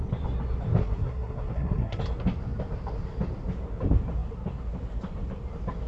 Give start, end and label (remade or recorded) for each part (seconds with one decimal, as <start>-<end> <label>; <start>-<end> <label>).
0.0-0.8 recorded; 0.8-2.0 remade; 2.0-5.9 recorded